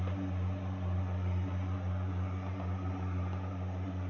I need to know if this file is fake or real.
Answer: real